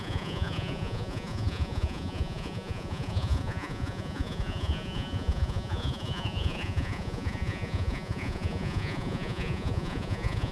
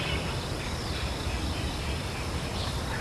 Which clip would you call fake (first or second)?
first